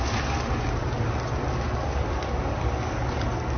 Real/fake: real